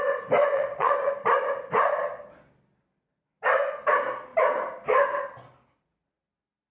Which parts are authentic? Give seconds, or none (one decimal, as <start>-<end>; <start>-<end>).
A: 0.0-0.4; 1.1-6.7